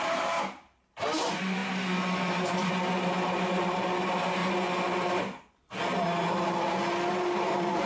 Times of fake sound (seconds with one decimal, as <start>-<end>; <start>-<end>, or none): 0.0-1.6; 2.7-4.4; 7.1-7.9